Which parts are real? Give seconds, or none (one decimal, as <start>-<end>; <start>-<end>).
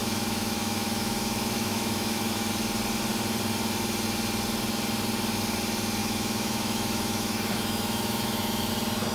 2.5-6.0; 8.7-9.1